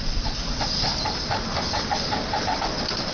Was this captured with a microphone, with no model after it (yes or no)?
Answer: yes